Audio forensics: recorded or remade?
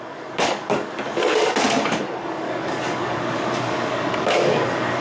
remade